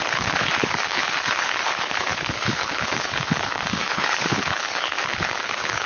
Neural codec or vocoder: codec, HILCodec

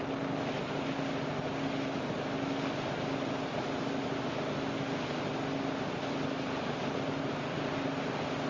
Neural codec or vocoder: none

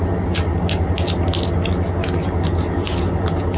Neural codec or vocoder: none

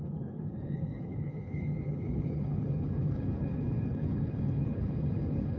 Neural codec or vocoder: codec, HILCodec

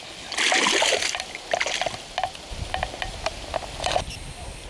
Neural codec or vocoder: none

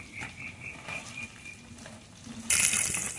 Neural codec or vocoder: none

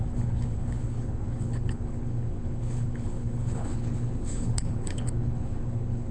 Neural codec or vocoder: codec, HILCodec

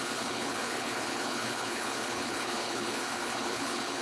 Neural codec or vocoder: codec, HILCodec